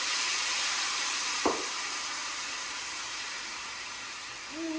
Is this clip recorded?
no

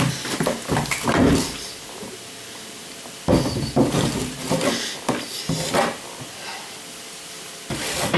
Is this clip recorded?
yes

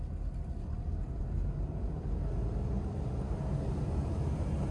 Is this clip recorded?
yes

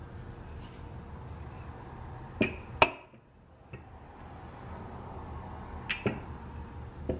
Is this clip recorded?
yes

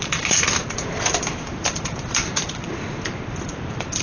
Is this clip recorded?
no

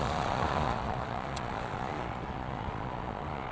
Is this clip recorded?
no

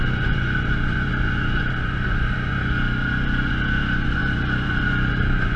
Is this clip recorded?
no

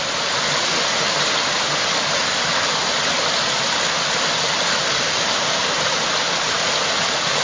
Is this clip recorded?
yes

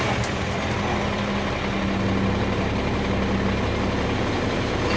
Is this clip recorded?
yes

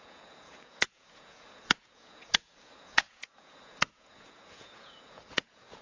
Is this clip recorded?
no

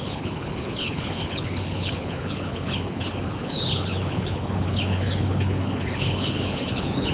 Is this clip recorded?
no